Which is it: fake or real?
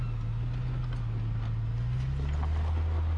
real